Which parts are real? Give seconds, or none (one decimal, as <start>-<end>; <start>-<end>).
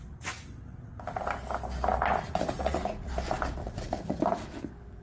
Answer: 0.0-2.1; 3.1-3.6; 4.2-5.0